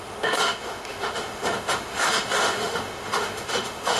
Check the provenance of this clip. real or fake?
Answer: fake